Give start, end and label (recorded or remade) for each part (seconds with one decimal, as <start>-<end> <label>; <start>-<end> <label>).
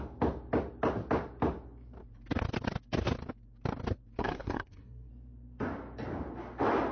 0.0-4.2 recorded; 4.2-5.1 remade; 5.1-6.9 recorded